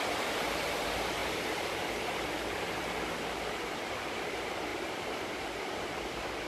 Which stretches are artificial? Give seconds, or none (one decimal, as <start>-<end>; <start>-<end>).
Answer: 0.0-6.5